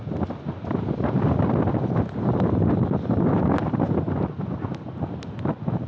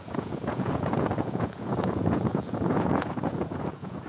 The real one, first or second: first